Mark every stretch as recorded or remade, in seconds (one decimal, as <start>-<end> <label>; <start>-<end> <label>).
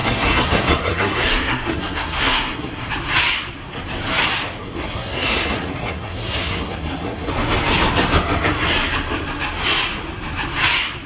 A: 0.0-2.9 remade; 2.9-4.6 recorded; 4.6-7.3 remade; 7.3-11.1 recorded